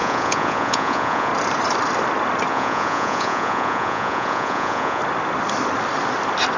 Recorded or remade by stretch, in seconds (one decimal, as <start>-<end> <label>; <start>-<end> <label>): 0.0-1.3 remade; 1.3-2.5 recorded; 2.5-5.0 remade; 5.0-6.6 recorded